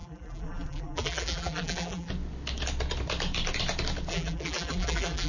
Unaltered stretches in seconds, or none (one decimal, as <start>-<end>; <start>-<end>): 2.1-4.1